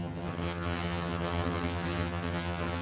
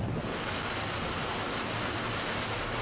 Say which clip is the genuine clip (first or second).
second